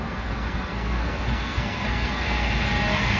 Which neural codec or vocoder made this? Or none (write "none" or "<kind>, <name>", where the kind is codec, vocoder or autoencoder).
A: codec, SNAC